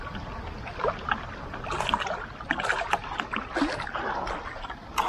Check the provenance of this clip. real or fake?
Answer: real